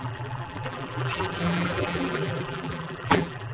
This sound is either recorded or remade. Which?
remade